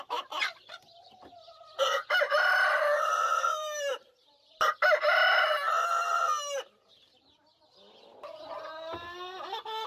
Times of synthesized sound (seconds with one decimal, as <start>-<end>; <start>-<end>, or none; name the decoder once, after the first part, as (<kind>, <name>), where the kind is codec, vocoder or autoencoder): 3.5-5.2 (vocoder, BigVGAN v2)